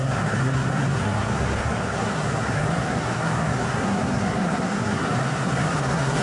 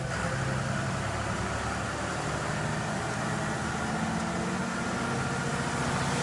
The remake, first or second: first